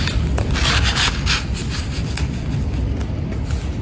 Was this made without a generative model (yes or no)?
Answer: yes